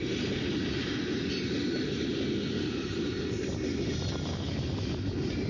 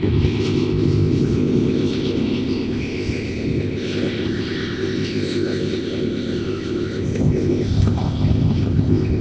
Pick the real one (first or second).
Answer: first